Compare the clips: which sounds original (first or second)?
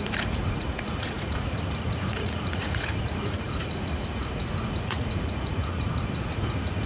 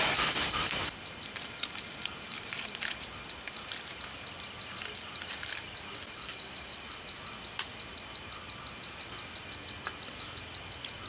second